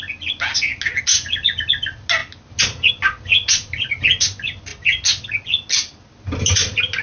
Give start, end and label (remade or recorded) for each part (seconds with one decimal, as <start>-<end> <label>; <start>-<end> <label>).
0.0-7.0 recorded